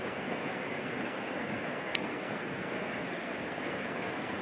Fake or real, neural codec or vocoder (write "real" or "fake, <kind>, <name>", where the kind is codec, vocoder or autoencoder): fake, codec, SNAC